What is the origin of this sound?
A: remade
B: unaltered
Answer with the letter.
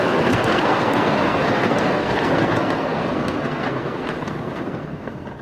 A